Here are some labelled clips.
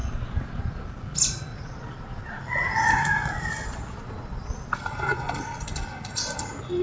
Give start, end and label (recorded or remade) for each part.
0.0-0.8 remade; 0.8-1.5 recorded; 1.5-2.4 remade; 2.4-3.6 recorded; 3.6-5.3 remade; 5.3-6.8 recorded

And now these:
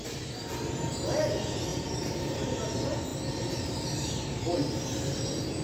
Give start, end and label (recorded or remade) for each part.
0.0-1.7 recorded; 1.7-2.5 remade; 2.5-5.6 recorded

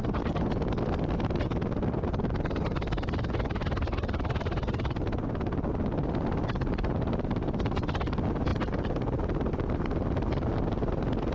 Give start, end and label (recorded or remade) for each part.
0.0-11.3 recorded

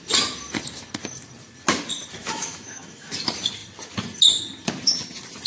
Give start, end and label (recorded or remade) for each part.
0.0-2.2 recorded; 2.2-3.1 remade; 3.1-5.5 recorded

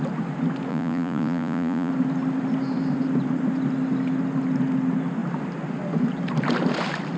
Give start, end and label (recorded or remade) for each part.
0.0-0.7 recorded; 0.7-1.9 remade; 1.9-7.2 recorded